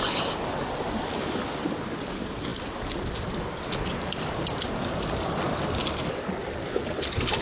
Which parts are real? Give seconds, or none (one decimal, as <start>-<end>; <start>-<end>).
0.0-7.4